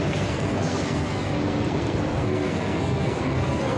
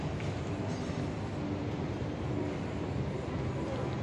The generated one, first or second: first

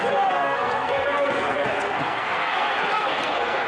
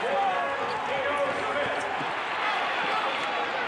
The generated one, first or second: first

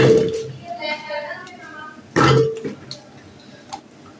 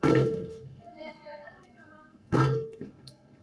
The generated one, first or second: second